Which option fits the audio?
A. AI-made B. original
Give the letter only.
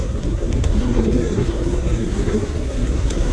A